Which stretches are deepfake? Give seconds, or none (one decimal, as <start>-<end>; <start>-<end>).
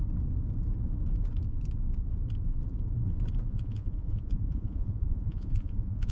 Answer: 3.5-6.1